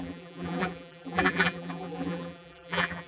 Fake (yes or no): yes